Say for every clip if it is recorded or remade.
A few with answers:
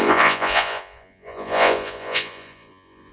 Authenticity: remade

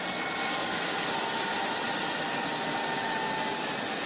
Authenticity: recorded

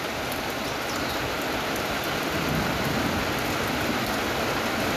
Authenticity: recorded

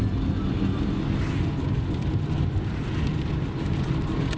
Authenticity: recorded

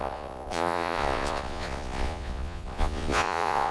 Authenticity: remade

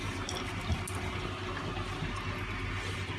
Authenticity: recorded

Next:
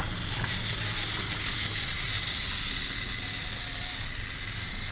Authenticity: recorded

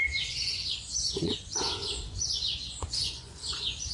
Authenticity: remade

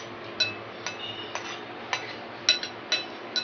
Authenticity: recorded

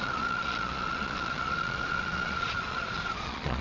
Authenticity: remade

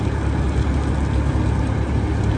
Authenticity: recorded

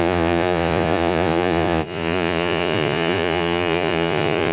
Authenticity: remade